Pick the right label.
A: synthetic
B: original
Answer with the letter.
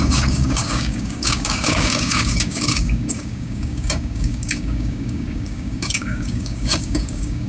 A